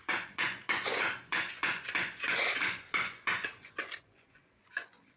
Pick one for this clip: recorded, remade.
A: remade